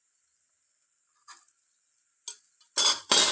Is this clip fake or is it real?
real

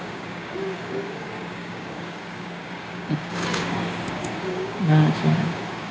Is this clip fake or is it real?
fake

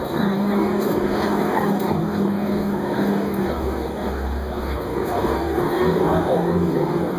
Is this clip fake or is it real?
fake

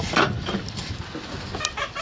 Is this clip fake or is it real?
real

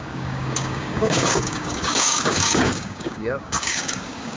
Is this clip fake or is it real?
fake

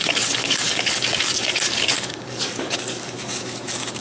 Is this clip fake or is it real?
fake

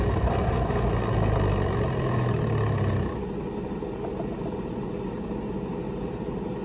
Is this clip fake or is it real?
real